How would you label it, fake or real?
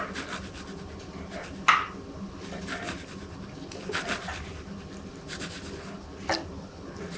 real